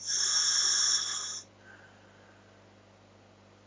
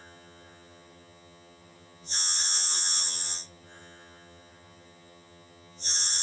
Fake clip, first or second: second